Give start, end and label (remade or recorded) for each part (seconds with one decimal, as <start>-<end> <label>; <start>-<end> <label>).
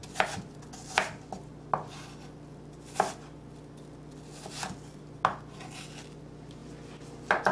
0.0-7.5 recorded